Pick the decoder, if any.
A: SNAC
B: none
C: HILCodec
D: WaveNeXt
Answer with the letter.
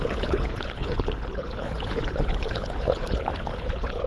C